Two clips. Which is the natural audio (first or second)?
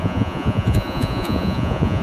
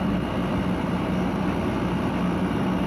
second